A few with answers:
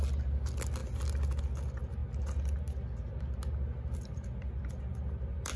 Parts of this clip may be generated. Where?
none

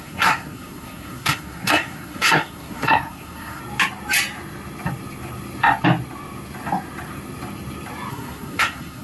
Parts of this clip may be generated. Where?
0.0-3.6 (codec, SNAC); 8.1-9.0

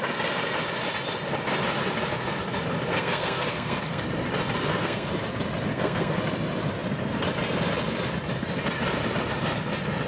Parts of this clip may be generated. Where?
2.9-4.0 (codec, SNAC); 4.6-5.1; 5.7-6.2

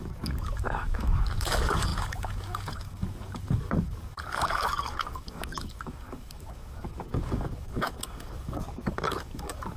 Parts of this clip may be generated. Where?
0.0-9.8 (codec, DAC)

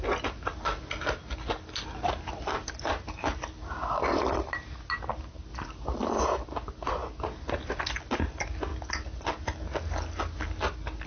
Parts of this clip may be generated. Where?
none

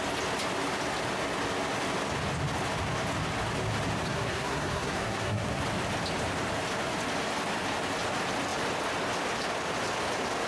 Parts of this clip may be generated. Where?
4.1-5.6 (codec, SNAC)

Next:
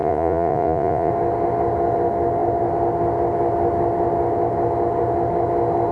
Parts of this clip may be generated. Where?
0.0-1.1 (vocoder, Vocos)

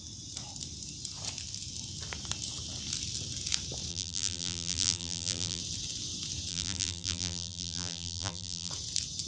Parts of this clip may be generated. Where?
3.9-5.6 (vocoder, BigVGAN v2); 6.5-8.7